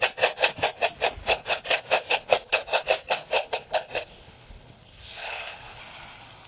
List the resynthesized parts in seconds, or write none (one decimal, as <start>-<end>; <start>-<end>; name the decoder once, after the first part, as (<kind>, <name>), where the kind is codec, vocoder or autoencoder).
1.2-2.8 (codec, HILCodec); 3.2-5.8